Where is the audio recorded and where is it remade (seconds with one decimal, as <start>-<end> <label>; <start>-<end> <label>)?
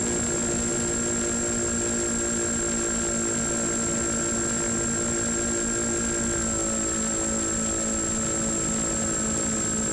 0.0-9.9 recorded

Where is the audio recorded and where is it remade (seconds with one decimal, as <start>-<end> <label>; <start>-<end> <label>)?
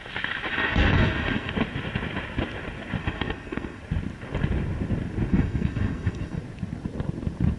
0.0-0.5 recorded; 0.5-1.5 remade; 1.5-3.0 recorded; 3.0-3.8 remade; 3.8-5.3 recorded; 5.3-6.4 remade; 6.4-7.6 recorded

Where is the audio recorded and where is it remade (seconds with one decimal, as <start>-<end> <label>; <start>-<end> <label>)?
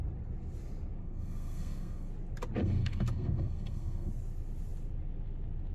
0.0-1.0 recorded; 1.0-2.1 remade; 2.1-2.6 recorded; 2.6-4.1 remade; 4.1-5.7 recorded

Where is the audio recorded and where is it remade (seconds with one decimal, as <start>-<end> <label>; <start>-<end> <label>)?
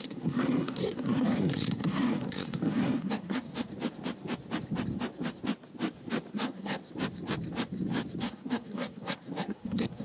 0.0-3.7 remade; 3.7-6.3 recorded; 6.3-6.8 remade; 6.8-8.2 recorded; 8.2-10.0 remade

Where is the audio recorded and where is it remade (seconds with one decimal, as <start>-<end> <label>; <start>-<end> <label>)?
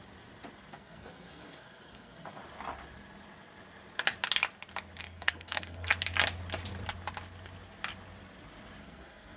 0.0-0.7 recorded; 0.7-2.4 remade; 2.4-5.0 recorded; 5.0-5.9 remade; 5.9-8.8 recorded; 8.8-9.4 remade